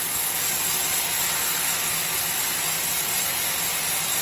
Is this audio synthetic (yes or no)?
no